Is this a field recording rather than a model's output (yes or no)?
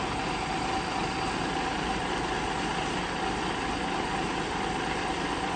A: no